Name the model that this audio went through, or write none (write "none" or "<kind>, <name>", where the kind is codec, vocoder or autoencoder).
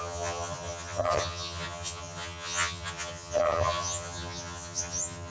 vocoder, HiFi-GAN